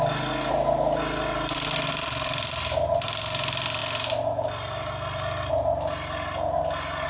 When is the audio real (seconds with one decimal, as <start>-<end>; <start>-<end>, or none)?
0.0-7.1